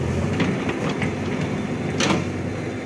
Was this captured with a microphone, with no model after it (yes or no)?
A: yes